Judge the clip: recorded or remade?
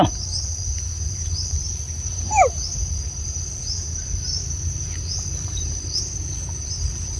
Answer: remade